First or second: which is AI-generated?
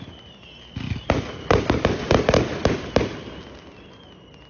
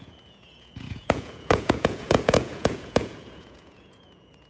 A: second